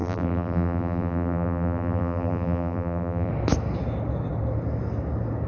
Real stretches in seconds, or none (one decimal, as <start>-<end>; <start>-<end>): 3.3-5.5